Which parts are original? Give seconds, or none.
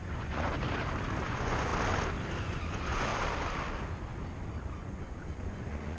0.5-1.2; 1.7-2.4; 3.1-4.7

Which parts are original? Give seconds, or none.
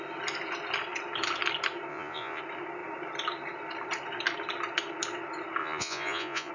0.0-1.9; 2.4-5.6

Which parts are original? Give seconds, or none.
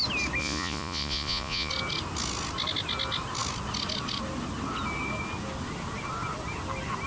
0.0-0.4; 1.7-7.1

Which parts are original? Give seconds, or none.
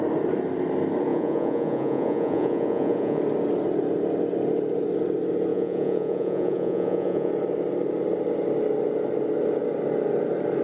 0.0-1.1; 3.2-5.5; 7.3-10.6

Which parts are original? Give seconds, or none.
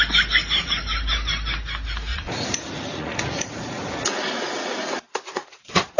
0.0-2.1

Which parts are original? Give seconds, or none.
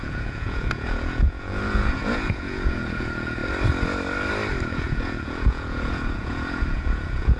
3.4-4.7